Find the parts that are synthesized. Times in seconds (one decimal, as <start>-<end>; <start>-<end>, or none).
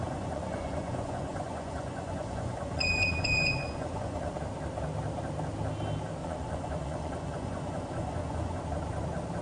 0.0-4.3; 6.2-8.6